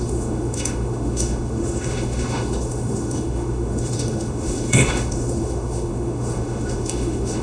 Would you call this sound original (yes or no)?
no